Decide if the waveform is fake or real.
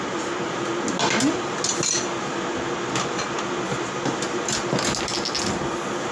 real